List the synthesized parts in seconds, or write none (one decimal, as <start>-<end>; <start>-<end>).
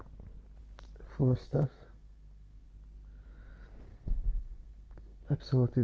1.2-2.7; 3.9-5.2